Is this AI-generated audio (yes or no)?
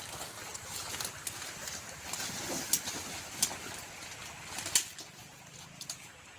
no